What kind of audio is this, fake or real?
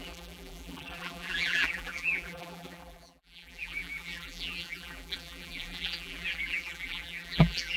fake